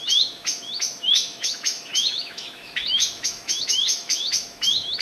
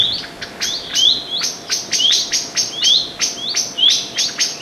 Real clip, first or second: second